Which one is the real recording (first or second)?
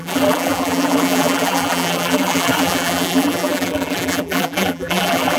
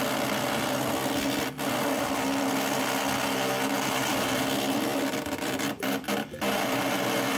second